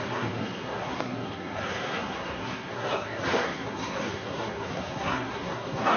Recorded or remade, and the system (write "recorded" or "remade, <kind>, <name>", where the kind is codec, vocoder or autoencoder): remade, codec, SNAC